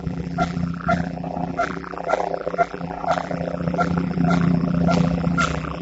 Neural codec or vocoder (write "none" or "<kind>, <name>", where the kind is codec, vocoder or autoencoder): vocoder, BigVGAN v2